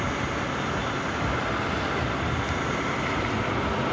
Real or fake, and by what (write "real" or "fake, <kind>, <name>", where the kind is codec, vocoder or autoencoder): real